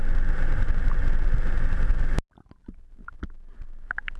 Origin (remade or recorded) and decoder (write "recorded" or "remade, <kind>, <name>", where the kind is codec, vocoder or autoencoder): recorded